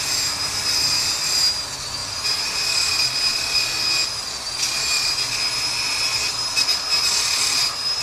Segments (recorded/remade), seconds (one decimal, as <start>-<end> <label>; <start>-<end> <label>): 0.0-8.0 recorded